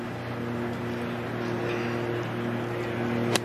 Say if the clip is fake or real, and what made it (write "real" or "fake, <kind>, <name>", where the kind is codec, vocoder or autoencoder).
real